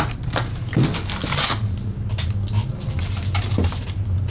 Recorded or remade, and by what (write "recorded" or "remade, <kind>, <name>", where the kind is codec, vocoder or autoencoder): remade, vocoder, BigVGAN v2